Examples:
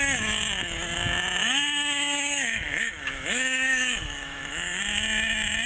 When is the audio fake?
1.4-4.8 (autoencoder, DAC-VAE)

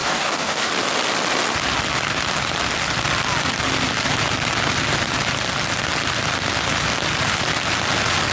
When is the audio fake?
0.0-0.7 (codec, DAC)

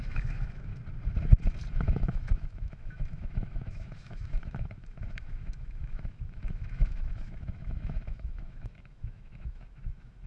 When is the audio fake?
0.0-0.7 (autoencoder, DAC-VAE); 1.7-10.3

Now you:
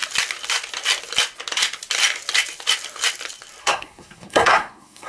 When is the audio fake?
3.6-5.1 (codec, SNAC)